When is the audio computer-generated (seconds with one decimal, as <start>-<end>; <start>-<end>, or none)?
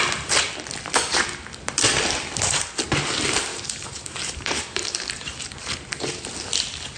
3.5-5.6